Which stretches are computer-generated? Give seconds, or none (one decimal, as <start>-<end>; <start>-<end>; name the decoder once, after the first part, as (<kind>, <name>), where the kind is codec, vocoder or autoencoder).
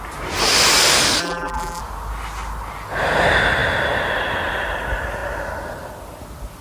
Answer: 1.2-1.8 (vocoder, BigVGAN v2)